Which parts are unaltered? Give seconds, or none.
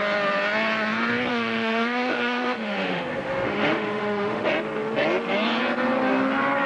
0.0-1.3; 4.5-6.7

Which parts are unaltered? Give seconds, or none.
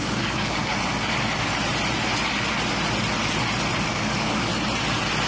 0.7-3.9; 4.5-5.3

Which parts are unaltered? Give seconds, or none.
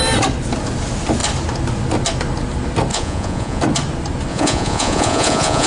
0.0-2.9; 3.6-4.3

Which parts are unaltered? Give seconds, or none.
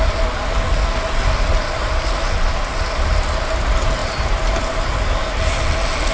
0.0-6.1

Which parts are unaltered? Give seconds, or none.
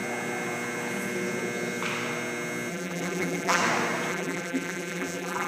0.0-2.7; 3.6-4.1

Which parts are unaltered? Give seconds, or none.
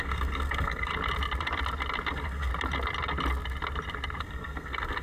0.9-2.1; 2.5-4.2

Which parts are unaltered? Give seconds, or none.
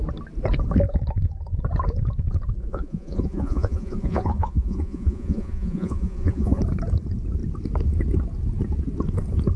0.0-2.6; 6.6-9.6